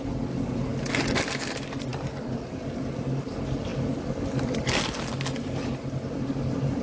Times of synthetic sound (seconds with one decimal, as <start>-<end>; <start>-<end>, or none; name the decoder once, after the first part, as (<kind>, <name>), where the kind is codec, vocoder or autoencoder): none